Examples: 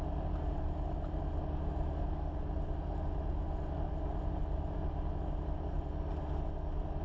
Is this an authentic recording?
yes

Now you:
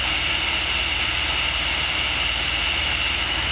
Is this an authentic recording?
yes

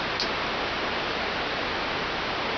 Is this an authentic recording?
yes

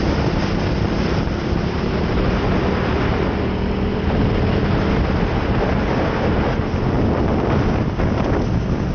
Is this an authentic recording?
yes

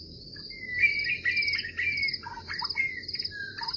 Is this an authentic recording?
yes